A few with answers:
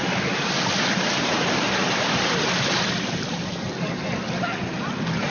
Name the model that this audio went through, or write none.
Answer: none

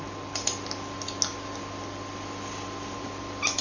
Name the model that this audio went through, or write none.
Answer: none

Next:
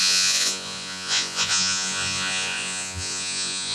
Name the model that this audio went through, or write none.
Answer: vocoder, Vocos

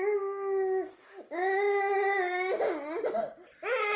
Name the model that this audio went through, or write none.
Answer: none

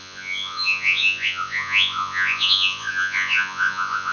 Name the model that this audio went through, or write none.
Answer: vocoder, Vocos